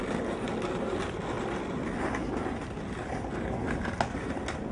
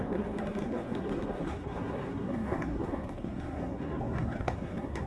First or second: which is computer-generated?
second